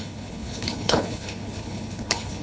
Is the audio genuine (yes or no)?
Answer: no